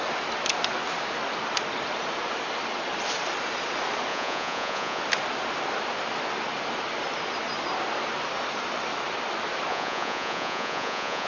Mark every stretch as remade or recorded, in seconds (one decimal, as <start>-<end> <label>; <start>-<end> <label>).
0.0-4.1 recorded; 4.1-5.0 remade; 5.0-9.7 recorded; 9.7-11.3 remade